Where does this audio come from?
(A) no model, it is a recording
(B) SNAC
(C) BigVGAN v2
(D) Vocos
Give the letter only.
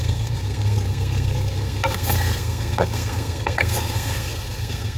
B